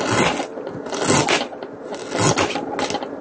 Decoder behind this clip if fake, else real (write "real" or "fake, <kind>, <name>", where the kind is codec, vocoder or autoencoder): real